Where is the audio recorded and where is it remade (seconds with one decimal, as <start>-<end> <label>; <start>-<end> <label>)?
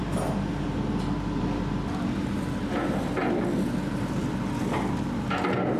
0.0-5.8 recorded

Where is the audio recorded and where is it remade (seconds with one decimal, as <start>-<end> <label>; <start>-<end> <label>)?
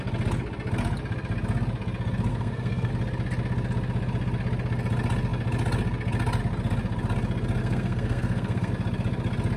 0.0-2.3 recorded; 2.3-2.9 remade; 2.9-7.6 recorded; 7.6-8.7 remade; 8.7-9.6 recorded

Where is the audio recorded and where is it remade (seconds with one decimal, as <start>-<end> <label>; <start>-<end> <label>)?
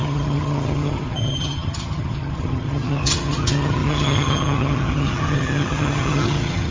0.0-6.7 remade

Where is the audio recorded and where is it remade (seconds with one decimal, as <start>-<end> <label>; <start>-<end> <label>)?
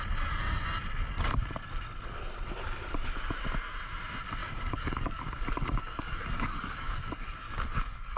0.0-4.4 recorded; 4.4-8.2 remade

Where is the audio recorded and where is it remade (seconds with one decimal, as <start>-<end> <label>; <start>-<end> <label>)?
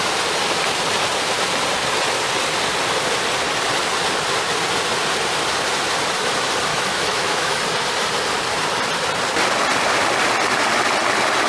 0.0-6.7 recorded; 6.7-7.6 remade; 7.6-11.5 recorded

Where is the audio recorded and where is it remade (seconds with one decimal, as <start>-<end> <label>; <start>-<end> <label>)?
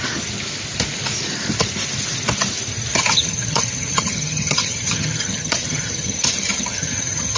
0.0-2.9 recorded; 2.9-7.4 remade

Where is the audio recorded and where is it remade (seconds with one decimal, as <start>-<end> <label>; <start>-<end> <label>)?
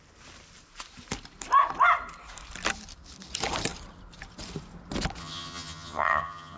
0.0-5.2 recorded; 5.2-6.6 remade